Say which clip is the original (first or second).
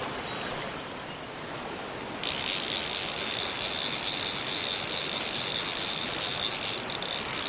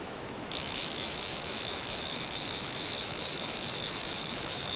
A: first